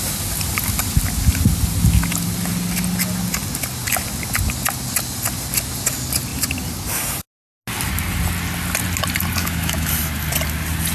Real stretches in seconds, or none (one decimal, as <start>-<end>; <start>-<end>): 0.0-9.4; 9.9-10.9